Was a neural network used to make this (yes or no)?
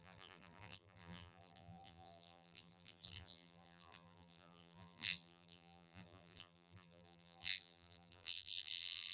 yes